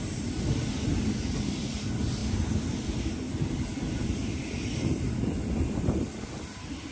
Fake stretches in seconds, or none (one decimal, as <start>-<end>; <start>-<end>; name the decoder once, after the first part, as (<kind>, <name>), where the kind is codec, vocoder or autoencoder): 2.2-6.3 (vocoder, BigVGAN v2)